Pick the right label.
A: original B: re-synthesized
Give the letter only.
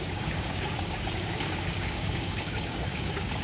B